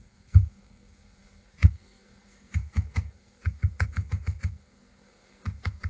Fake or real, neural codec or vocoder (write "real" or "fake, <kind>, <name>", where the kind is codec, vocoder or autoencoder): fake, codec, SNAC